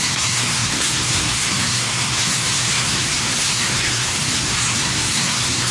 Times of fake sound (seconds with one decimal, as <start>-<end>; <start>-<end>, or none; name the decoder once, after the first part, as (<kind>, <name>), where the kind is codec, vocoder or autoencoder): 0.0-5.7 (codec, SNAC)